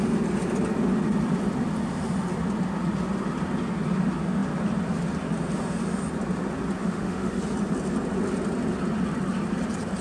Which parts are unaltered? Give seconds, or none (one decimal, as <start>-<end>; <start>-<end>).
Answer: 0.0-6.8; 7.4-10.0